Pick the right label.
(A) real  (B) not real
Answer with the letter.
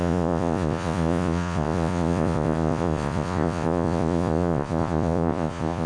B